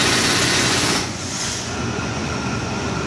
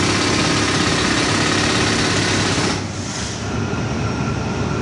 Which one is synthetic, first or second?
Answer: first